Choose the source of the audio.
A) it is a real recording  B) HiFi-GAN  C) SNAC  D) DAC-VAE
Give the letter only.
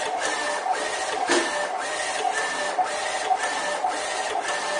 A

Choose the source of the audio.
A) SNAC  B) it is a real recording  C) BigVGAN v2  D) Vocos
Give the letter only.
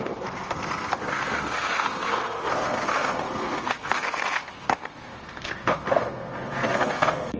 A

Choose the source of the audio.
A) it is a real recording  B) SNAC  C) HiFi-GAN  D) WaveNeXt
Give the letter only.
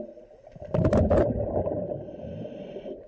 A